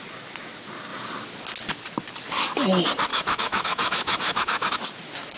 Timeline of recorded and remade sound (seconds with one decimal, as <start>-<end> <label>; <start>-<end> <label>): 0.0-3.1 recorded; 3.1-4.8 remade; 4.8-5.4 recorded